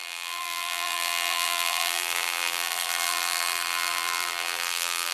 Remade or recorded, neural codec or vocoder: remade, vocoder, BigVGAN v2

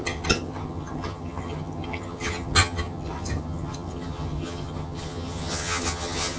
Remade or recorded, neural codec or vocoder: remade, vocoder, HiFi-GAN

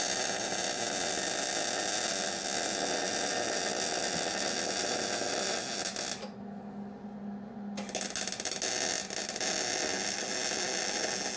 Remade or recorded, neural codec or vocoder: recorded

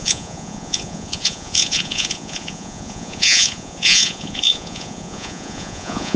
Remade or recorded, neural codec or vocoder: remade, vocoder, Vocos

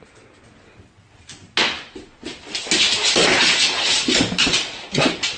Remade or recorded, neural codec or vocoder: recorded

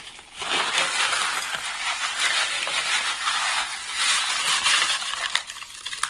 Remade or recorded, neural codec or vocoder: recorded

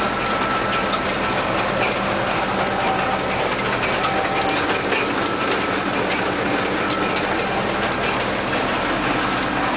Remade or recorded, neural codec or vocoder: recorded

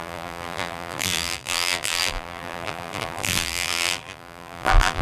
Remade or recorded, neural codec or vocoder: remade, vocoder, BigVGAN v2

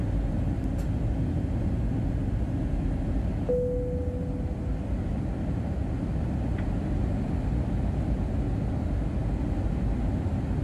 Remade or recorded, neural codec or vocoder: recorded